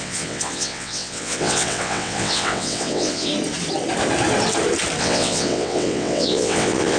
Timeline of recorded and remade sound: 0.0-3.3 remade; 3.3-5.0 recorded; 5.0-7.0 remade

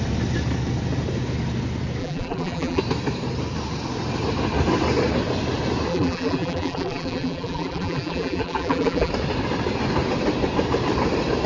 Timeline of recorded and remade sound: 0.0-2.0 recorded; 2.0-2.8 remade; 2.8-5.9 recorded; 5.9-9.1 remade; 9.1-11.5 recorded

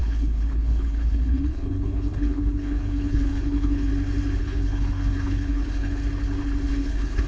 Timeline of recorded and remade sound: 0.0-3.9 remade; 3.9-4.4 recorded; 4.4-6.0 remade; 6.0-6.7 recorded; 6.7-7.3 remade

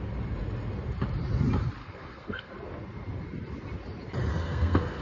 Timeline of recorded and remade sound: 0.0-1.8 recorded; 1.8-2.5 remade; 2.5-4.3 recorded; 4.3-5.0 remade

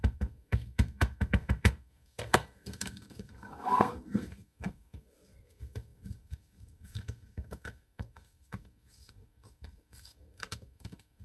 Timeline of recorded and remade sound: 0.0-11.2 remade